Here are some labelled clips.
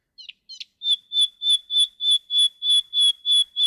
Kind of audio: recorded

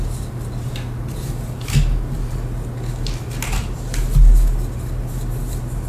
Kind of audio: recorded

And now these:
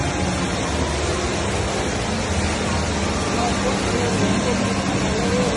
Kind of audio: recorded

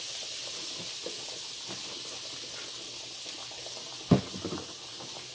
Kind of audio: recorded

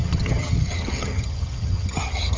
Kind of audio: remade